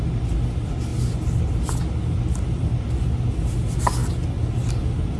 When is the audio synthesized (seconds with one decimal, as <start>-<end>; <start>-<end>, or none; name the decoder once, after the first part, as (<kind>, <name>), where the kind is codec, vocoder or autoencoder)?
none